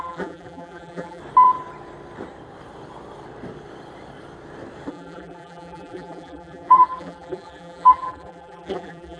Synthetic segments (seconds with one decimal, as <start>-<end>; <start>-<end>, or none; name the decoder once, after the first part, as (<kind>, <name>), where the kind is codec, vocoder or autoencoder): 0.0-1.2 (vocoder, BigVGAN v2); 4.9-9.2